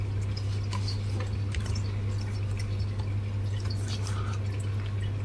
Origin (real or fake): real